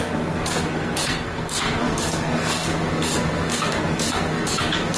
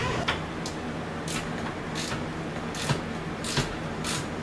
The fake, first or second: first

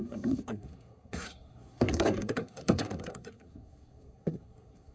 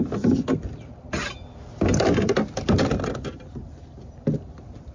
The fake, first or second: first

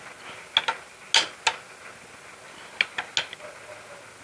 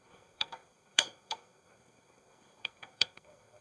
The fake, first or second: second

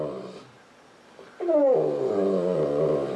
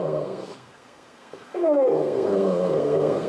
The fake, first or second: second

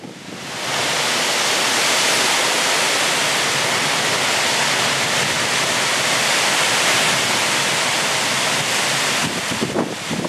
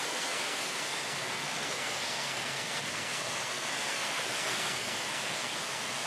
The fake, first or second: second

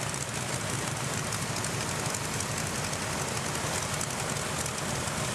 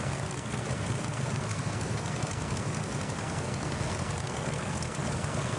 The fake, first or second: second